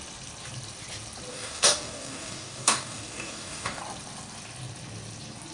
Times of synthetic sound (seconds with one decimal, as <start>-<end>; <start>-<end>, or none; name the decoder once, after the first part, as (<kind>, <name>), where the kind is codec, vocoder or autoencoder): 1.3-3.8 (codec, DAC)